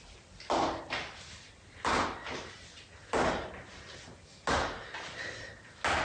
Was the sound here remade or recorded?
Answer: recorded